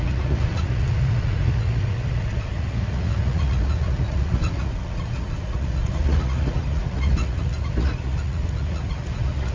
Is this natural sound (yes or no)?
no